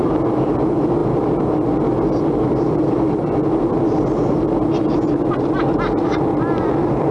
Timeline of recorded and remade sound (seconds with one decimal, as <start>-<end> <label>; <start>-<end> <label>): 0.0-7.1 recorded